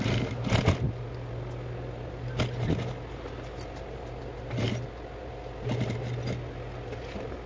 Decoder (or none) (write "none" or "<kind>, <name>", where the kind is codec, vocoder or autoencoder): none